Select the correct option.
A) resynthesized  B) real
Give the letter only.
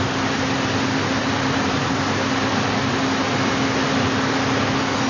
B